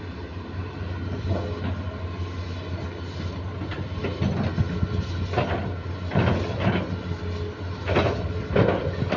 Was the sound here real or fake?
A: real